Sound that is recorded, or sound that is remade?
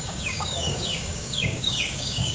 remade